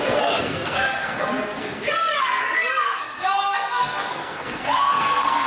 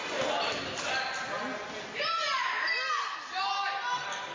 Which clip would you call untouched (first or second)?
second